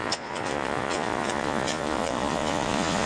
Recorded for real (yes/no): no